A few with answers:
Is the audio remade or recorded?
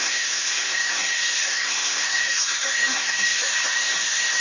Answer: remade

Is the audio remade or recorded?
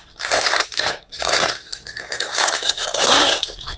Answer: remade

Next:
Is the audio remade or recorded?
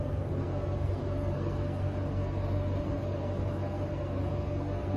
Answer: remade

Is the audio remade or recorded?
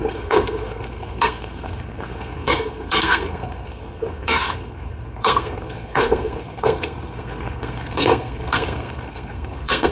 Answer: remade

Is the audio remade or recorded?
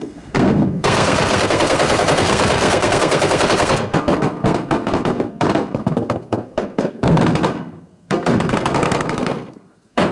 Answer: remade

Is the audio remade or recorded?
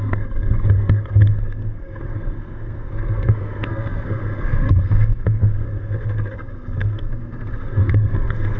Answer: remade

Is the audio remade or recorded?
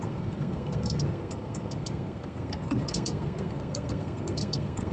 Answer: remade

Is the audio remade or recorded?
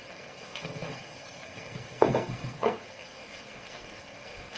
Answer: remade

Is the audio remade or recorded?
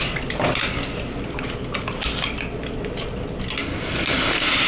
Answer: recorded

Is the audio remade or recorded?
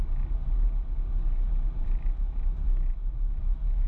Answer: recorded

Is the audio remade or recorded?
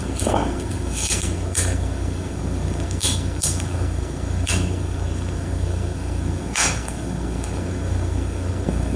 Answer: remade